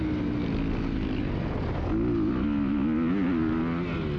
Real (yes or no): yes